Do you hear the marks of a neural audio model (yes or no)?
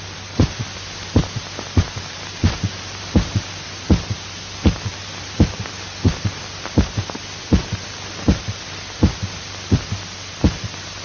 no